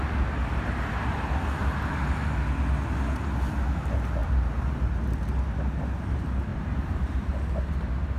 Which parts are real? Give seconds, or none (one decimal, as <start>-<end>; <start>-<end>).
0.0-4.2; 4.9-6.5; 7.2-8.2